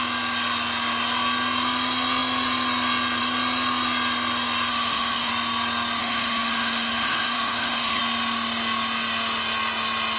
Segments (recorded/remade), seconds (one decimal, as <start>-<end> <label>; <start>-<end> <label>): 0.0-4.7 recorded; 4.7-5.3 remade; 5.3-6.0 recorded; 6.0-8.0 remade; 8.0-10.2 recorded